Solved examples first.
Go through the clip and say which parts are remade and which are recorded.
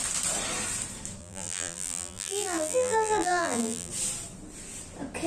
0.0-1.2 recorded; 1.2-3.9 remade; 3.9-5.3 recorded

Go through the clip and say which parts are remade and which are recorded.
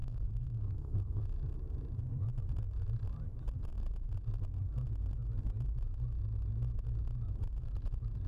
0.0-1.2 remade; 1.2-8.3 recorded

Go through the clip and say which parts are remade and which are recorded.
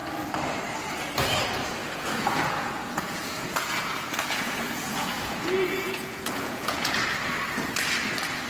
0.0-1.8 recorded; 1.8-6.9 remade; 6.9-8.5 recorded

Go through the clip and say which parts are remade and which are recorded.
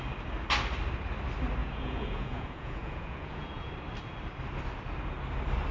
0.0-1.6 recorded; 1.6-3.7 remade; 3.7-5.7 recorded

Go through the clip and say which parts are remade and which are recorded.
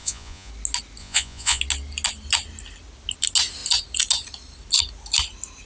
0.0-0.5 remade; 0.5-1.0 recorded; 1.0-1.6 remade; 1.6-5.7 recorded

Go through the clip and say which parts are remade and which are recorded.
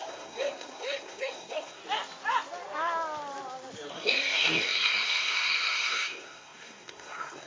0.0-1.8 remade; 1.8-3.9 recorded; 3.9-7.5 remade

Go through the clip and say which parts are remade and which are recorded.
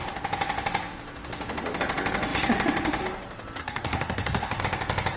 0.0-3.6 recorded; 3.6-4.6 remade; 4.6-5.2 recorded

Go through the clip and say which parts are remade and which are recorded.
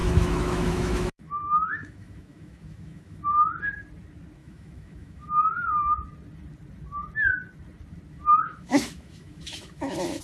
0.0-3.2 remade; 3.2-4.4 recorded; 4.4-5.7 remade; 5.7-8.3 recorded; 8.3-10.2 remade